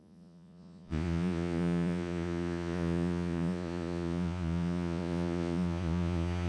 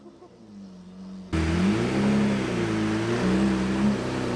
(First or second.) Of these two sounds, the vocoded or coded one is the first